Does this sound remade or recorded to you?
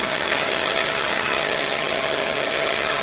remade